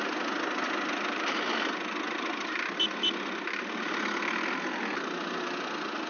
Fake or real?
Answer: real